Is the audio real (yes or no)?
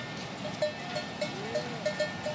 yes